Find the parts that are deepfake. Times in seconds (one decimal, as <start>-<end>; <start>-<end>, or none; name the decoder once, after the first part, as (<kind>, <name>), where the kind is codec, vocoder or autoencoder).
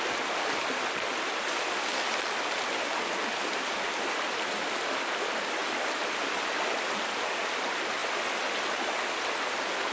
none